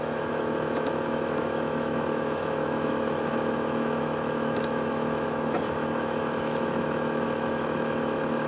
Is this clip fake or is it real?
fake